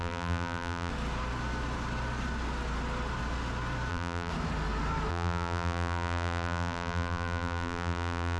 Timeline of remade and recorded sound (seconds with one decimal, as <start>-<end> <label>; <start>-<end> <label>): 0.0-0.9 remade; 0.9-3.9 recorded; 3.9-4.3 remade; 4.3-5.1 recorded; 5.1-8.4 remade